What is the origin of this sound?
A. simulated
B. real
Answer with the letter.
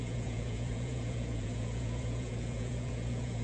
A